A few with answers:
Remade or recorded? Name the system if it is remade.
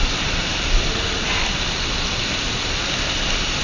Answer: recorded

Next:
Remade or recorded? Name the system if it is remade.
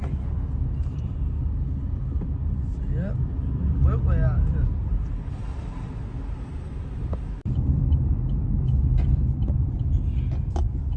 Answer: recorded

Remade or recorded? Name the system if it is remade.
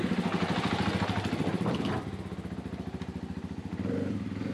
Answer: recorded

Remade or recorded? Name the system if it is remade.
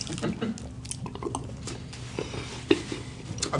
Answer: recorded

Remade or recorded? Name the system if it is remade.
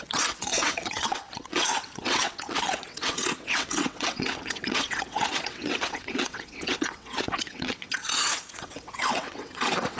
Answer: remade, vocoder, WaveNeXt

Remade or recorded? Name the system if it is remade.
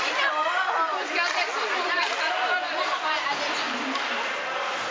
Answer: recorded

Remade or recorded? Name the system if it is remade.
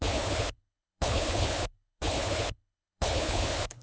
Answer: remade, codec, HILCodec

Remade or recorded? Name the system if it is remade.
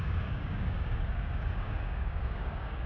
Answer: remade, codec, DAC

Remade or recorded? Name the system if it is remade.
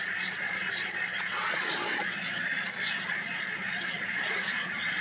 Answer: remade, vocoder, Vocos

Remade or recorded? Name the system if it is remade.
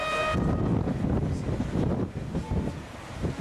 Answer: recorded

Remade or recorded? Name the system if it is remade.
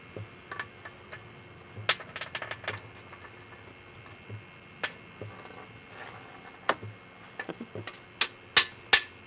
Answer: recorded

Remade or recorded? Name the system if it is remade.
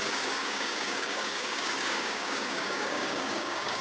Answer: remade, codec, DAC